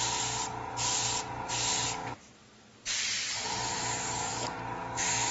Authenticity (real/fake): real